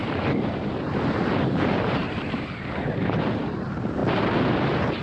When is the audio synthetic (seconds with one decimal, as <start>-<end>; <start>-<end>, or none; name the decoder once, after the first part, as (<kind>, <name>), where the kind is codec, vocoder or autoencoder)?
0.0-1.5 (vocoder, BigVGAN v2)